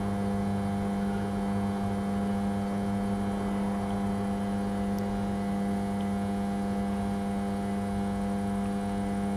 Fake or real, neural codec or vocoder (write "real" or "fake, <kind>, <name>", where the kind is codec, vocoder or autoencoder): real